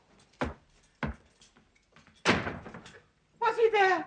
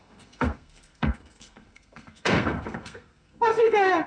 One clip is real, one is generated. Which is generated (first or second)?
second